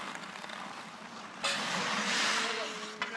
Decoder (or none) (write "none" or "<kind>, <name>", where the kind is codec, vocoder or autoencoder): none